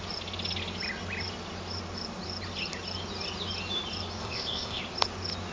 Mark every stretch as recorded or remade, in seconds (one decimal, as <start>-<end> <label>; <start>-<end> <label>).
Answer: 0.0-4.2 recorded; 4.2-4.8 remade; 4.8-5.5 recorded